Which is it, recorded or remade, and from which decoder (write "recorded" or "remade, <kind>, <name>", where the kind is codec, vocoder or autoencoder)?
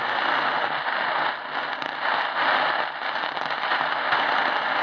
recorded